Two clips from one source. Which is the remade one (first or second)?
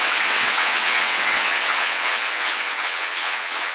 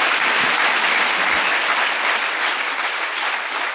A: first